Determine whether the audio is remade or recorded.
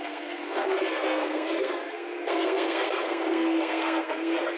remade